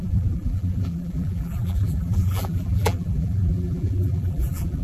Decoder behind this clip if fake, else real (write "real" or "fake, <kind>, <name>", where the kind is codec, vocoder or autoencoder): fake, vocoder, BigVGAN v2